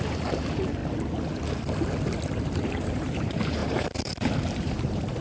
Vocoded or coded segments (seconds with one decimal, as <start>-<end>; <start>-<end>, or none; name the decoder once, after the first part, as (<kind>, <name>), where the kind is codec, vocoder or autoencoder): 0.0-0.8 (vocoder, BigVGAN v2); 2.4-5.2